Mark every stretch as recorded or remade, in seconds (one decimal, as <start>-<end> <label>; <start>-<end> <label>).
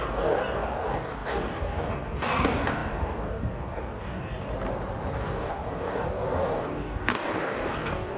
0.0-4.5 remade; 4.5-5.2 recorded; 5.2-8.2 remade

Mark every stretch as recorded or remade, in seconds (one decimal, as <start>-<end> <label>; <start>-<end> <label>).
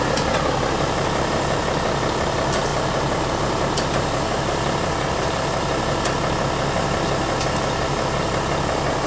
0.0-9.1 recorded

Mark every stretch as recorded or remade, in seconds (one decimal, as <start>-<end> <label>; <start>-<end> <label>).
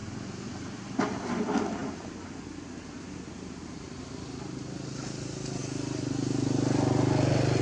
0.0-7.6 recorded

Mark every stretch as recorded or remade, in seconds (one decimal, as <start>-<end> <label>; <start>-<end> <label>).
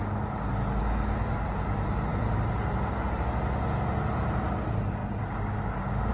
0.0-6.1 recorded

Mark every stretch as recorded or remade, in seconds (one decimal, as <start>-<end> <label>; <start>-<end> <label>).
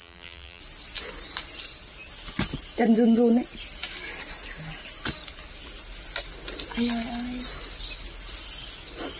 0.0-0.6 remade; 0.6-9.2 recorded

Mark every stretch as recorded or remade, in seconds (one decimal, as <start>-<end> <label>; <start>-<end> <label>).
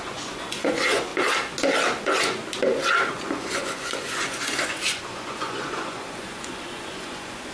0.0-1.1 remade; 1.1-2.0 recorded; 2.0-2.4 remade; 2.4-3.1 recorded; 3.1-7.5 remade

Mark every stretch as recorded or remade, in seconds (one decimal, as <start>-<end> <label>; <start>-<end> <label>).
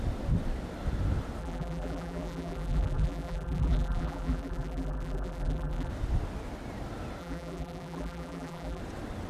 0.0-1.4 recorded; 1.4-5.9 remade; 5.9-7.2 recorded; 7.2-8.8 remade; 8.8-9.3 recorded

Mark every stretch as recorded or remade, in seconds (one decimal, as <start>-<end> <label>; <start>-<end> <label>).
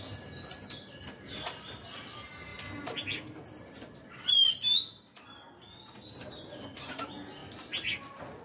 0.0-8.4 recorded